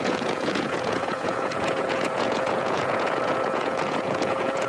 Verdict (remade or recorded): remade